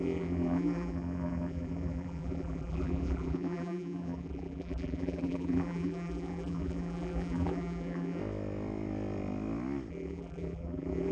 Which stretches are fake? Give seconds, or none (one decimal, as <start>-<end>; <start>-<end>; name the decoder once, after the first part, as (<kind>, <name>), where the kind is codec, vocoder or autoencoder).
0.0-8.2 (vocoder, BigVGAN v2); 9.9-11.1